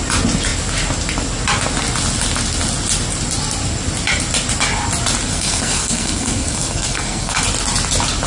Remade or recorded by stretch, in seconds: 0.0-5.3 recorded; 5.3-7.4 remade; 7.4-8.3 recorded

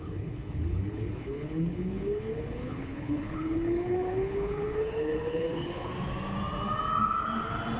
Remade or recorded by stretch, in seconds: 0.0-5.9 remade; 5.9-7.8 recorded

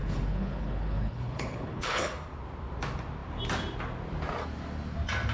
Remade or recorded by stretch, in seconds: 0.0-2.1 remade; 2.1-5.3 recorded